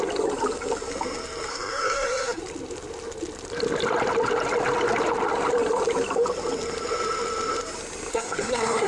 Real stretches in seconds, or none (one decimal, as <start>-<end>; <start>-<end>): 0.0-1.5; 2.4-8.1